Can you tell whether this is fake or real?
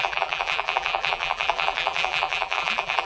fake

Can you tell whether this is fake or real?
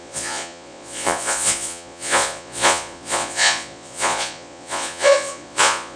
fake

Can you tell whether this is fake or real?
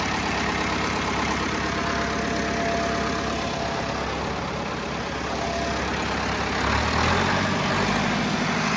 real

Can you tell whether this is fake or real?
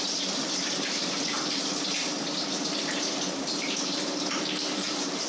fake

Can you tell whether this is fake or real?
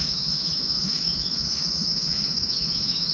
fake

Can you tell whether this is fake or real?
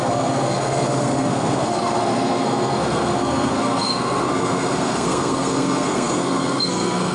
fake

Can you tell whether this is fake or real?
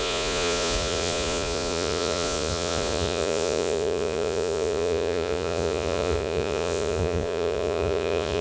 fake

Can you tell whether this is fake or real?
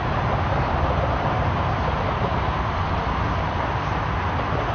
fake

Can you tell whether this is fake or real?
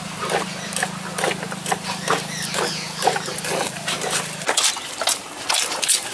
real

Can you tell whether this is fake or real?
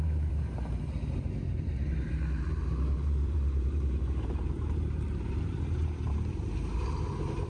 fake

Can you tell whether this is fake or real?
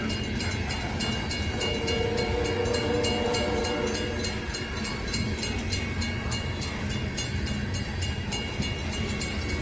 real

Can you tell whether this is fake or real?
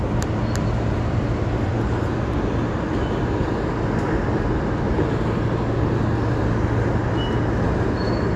real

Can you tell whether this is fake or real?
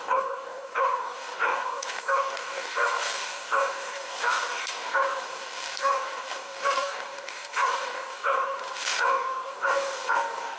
fake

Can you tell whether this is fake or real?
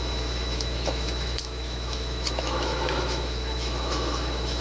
fake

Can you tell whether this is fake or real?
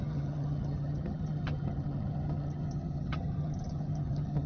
fake